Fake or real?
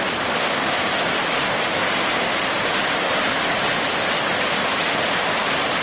real